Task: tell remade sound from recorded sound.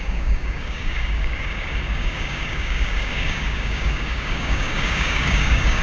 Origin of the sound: remade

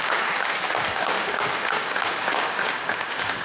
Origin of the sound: remade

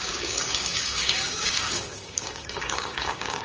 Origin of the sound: remade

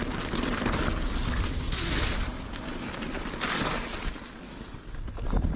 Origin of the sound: recorded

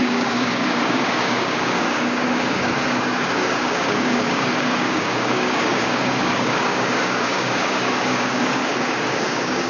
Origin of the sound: remade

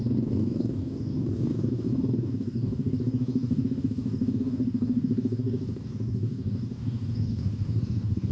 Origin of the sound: remade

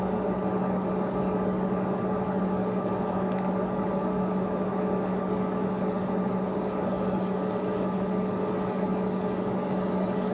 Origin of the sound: remade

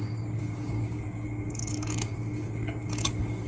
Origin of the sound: remade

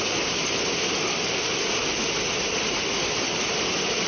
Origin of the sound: recorded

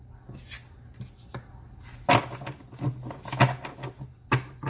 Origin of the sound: recorded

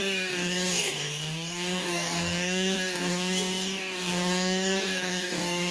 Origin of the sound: remade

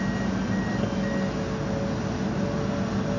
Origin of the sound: recorded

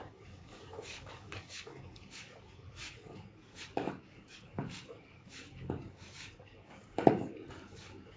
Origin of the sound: remade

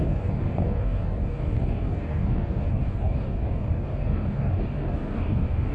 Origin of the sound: remade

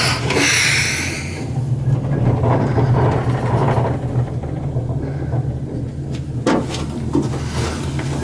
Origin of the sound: recorded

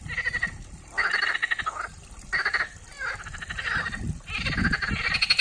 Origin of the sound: recorded